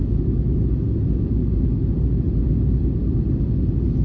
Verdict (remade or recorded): recorded